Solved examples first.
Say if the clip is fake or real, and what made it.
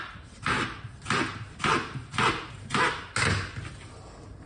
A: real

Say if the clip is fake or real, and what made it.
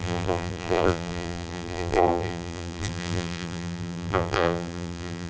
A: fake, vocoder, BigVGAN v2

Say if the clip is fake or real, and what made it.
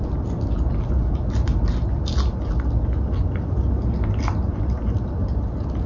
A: real